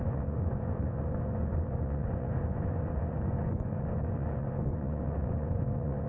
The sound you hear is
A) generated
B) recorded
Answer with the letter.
A